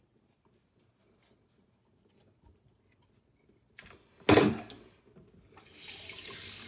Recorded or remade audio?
recorded